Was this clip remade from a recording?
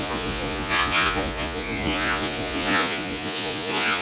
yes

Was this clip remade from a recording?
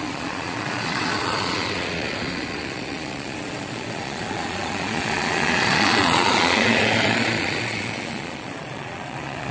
yes